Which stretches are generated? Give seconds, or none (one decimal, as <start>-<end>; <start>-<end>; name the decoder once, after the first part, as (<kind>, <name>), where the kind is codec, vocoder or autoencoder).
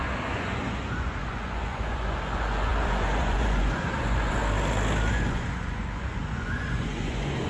0.0-4.4 (vocoder, Vocos); 5.1-7.5